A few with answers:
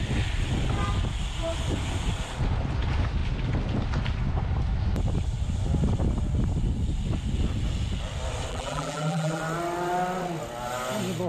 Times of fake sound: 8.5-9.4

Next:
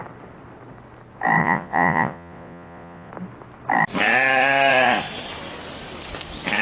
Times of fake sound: 1.4-3.1

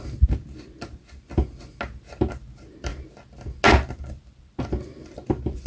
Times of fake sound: none

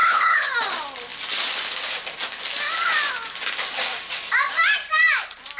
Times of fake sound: 0.0-0.5

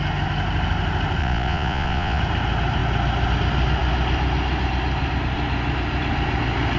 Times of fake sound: 1.2-2.2

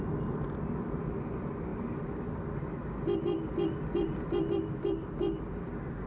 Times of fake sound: none

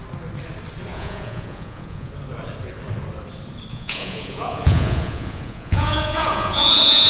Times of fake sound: 0.9-2.1; 3.7-7.1

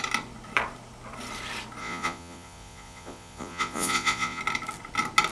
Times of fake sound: 1.8-4.4